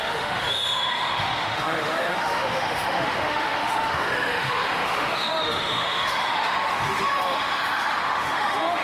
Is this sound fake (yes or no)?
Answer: yes